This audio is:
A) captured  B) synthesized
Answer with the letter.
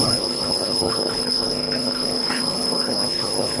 B